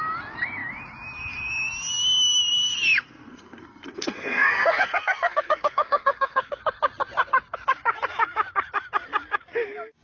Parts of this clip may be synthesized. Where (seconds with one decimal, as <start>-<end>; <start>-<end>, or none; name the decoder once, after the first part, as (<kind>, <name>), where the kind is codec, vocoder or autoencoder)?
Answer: 3.0-6.6 (codec, SNAC)